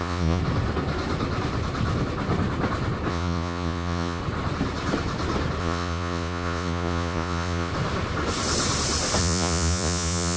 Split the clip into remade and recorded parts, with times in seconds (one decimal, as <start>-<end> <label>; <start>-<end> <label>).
0.0-0.4 remade; 0.4-3.1 recorded; 3.1-4.2 remade; 4.2-5.6 recorded; 5.6-7.7 remade; 7.7-9.2 recorded; 9.2-10.4 remade